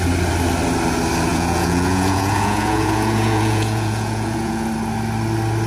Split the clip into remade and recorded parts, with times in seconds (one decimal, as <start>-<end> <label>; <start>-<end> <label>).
0.0-1.3 recorded; 1.3-4.7 remade; 4.7-5.7 recorded